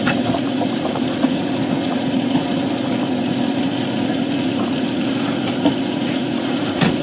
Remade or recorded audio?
remade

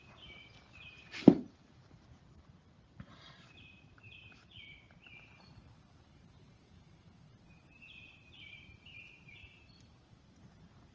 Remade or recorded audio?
remade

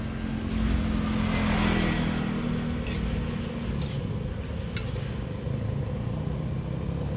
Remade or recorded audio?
recorded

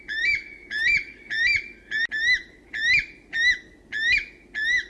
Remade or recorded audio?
recorded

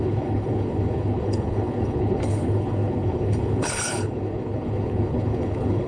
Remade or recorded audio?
remade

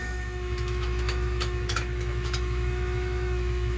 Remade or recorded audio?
remade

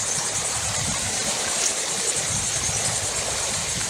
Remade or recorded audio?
remade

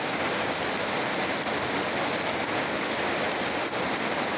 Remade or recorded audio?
recorded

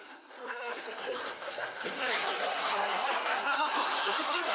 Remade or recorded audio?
remade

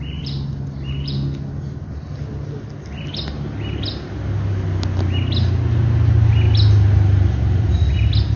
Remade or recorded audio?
recorded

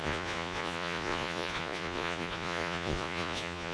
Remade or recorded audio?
remade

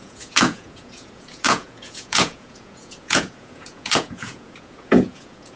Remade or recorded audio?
remade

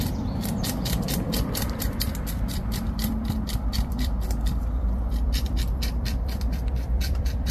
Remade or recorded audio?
remade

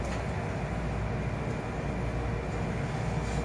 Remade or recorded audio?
recorded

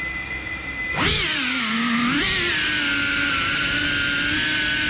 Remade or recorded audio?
recorded